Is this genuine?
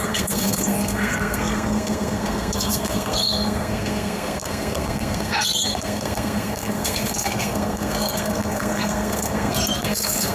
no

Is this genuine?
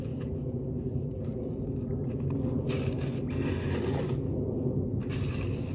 yes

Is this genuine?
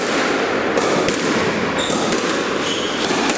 yes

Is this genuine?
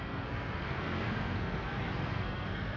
no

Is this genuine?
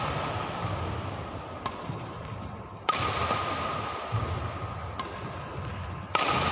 yes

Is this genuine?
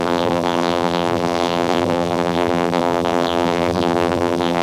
no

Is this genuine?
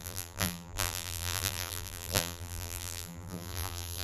no